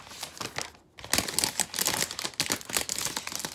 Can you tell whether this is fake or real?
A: real